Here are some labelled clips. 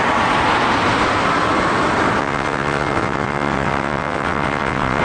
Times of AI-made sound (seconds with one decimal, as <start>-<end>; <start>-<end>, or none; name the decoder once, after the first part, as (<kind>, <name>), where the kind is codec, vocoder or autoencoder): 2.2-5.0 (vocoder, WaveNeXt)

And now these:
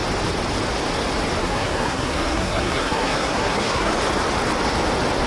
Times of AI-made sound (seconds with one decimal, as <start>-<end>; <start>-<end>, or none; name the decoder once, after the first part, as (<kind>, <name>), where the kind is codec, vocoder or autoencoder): 1.4-3.9 (codec, SNAC)

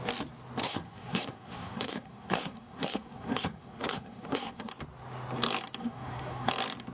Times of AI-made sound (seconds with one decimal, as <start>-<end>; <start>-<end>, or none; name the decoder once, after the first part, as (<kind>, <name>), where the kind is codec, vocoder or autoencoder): 0.6-4.7 (codec, SNAC); 5.8-6.5

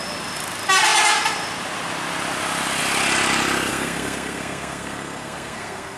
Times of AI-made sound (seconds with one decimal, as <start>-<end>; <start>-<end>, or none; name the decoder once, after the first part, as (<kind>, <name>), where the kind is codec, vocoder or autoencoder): 3.7-6.0 (codec, SNAC)

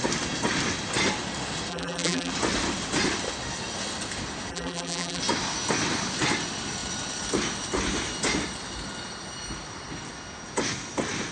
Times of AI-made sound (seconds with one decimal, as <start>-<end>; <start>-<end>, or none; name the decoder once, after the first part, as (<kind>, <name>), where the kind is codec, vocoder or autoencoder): 1.7-2.3 (vocoder, BigVGAN v2); 4.5-5.2